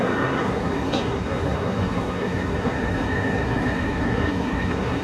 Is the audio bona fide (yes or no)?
no